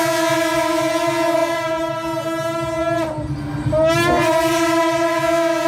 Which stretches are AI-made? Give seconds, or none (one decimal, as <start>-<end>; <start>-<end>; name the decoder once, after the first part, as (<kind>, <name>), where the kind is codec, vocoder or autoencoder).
none